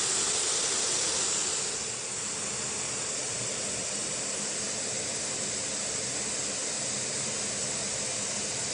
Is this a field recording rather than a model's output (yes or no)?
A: yes